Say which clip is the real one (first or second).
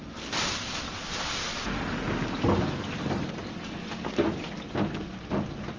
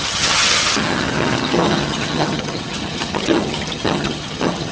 first